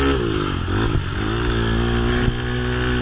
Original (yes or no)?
yes